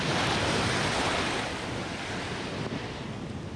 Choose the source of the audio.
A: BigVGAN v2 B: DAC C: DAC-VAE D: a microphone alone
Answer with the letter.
D